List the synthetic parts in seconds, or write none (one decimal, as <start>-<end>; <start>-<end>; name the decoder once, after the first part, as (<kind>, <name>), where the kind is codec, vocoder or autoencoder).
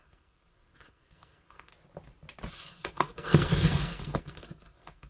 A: 0.0-1.7 (codec, SNAC); 2.5-5.1